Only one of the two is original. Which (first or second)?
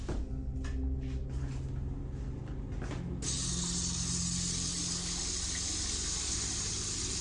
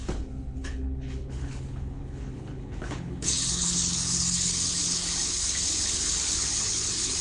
first